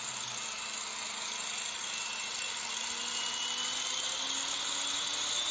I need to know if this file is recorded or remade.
recorded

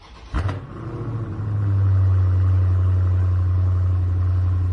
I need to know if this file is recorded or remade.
recorded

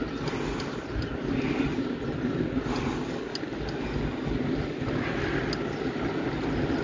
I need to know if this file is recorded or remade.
recorded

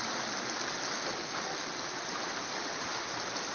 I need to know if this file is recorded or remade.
recorded